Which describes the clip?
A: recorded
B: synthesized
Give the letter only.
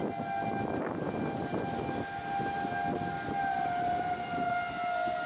A